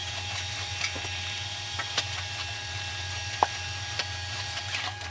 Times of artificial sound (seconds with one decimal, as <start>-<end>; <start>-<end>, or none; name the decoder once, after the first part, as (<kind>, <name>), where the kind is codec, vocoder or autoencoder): none